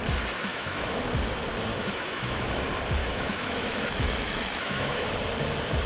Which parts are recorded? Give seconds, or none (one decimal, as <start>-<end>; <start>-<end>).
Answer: 0.0-0.5; 1.0-1.7; 2.5-3.0; 5.1-5.9